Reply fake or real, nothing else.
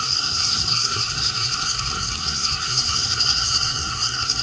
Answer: fake